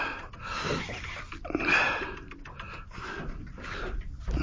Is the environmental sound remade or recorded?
recorded